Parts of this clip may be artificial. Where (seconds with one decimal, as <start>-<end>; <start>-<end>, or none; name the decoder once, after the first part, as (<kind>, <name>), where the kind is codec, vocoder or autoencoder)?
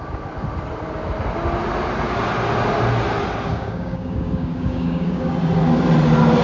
3.5-5.3 (codec, DAC)